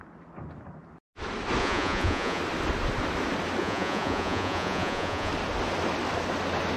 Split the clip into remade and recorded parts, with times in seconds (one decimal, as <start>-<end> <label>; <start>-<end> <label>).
0.0-1.6 recorded; 1.6-2.4 remade; 2.4-3.6 recorded; 3.6-5.3 remade; 5.3-6.8 recorded